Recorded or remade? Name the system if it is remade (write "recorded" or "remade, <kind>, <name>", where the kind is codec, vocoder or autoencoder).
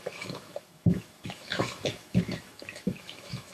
remade, autoencoder, DAC-VAE